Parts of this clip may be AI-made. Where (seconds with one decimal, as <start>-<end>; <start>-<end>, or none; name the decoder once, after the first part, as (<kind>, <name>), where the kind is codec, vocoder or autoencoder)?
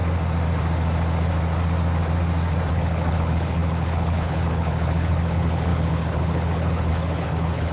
2.7-7.7 (codec, HILCodec)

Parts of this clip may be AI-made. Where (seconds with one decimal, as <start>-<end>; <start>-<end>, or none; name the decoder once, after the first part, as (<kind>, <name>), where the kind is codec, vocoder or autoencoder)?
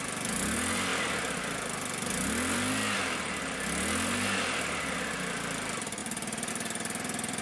6.0-6.5 (vocoder, BigVGAN v2)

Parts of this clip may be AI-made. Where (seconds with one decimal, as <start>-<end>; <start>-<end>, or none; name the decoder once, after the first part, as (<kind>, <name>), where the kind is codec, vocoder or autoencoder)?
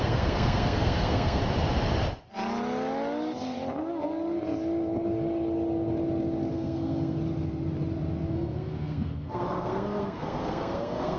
0.0-1.4 (codec, SNAC); 6.5-7.2; 8.3-11.2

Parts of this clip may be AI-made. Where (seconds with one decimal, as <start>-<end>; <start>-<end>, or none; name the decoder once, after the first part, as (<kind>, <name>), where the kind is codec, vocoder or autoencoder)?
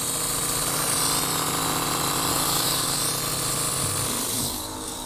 2.3-3.0 (codec, DAC); 4.3-5.1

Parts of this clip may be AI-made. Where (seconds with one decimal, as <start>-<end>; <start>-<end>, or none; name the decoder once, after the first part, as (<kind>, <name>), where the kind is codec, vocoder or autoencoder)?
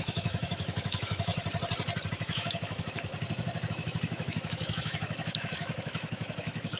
0.0-1.3 (autoencoder, DAC-VAE); 2.1-3.1; 3.7-6.8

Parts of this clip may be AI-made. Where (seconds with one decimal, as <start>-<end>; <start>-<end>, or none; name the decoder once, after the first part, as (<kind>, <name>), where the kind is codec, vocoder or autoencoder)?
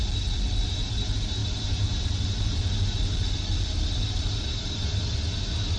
none